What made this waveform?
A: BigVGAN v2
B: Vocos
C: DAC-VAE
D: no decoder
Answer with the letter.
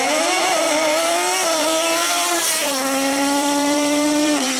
A